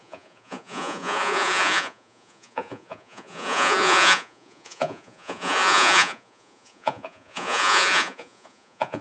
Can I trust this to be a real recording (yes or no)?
no